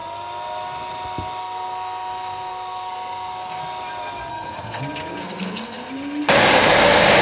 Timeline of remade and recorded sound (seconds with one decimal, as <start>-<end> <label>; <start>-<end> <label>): 0.0-1.4 recorded; 1.4-3.6 remade; 3.6-4.3 recorded; 4.3-4.8 remade; 4.8-5.2 recorded; 5.2-5.9 remade; 5.9-7.2 recorded